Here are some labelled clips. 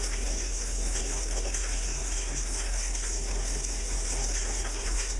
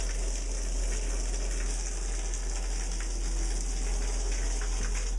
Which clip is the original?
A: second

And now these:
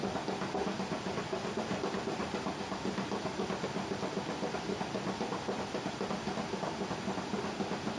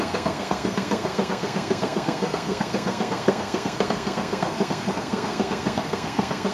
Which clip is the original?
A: first